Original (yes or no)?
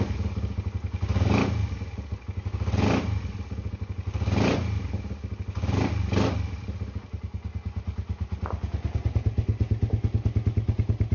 yes